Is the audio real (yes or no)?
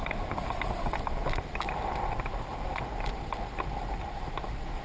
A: yes